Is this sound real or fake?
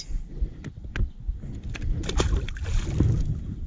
real